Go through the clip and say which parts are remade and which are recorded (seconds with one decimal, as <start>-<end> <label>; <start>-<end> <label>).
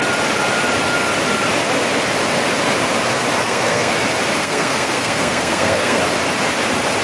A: 0.0-3.4 recorded; 3.4-3.9 remade; 3.9-4.4 recorded; 4.4-6.0 remade; 6.0-7.0 recorded